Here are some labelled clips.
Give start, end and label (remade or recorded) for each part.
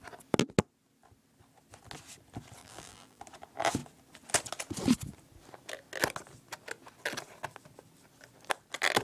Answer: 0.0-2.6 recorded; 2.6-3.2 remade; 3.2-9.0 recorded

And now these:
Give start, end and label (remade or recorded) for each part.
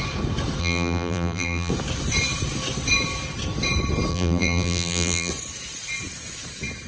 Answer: 0.0-0.6 recorded; 0.6-1.7 remade; 1.7-4.1 recorded; 4.1-5.3 remade; 5.3-6.9 recorded